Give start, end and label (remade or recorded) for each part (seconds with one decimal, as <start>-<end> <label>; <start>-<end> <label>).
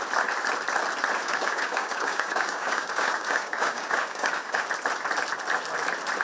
0.0-1.2 recorded; 1.2-4.6 remade; 4.6-6.2 recorded